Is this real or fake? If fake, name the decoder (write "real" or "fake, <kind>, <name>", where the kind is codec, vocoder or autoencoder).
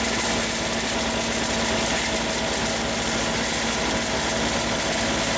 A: real